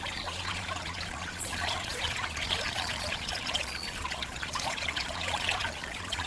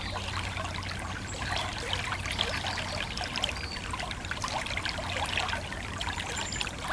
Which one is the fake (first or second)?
first